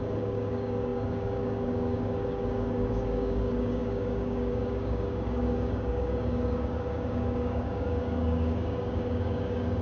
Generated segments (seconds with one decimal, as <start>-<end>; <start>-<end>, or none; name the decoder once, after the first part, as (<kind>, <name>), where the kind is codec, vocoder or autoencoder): 0.0-9.8 (codec, DAC)